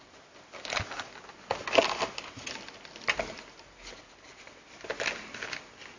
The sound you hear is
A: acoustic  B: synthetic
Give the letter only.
A